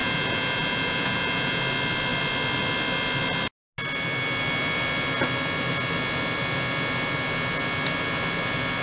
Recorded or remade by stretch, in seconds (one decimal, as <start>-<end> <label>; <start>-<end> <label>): 0.0-1.6 remade; 1.6-8.8 recorded